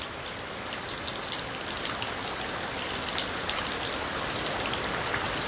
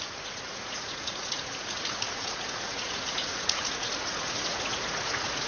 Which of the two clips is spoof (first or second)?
second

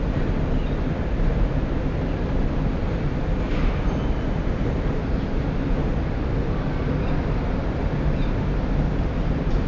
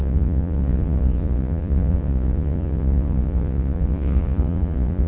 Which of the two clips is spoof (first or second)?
second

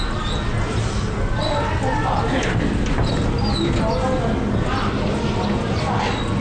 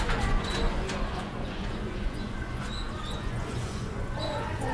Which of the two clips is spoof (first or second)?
second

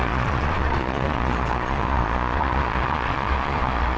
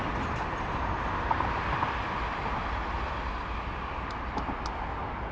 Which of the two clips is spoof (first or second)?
first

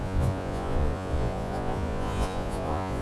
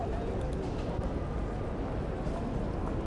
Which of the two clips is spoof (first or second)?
first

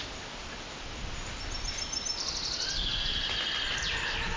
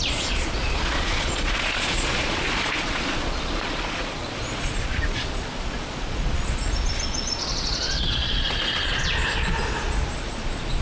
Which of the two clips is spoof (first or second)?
second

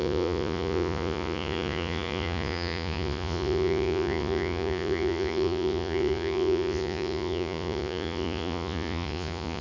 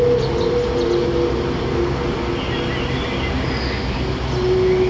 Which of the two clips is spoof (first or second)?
first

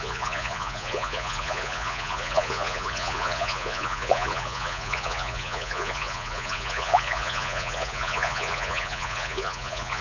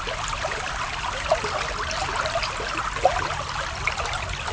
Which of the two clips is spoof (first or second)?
first